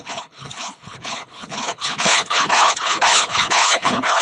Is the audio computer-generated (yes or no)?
yes